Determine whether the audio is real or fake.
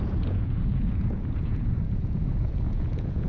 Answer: fake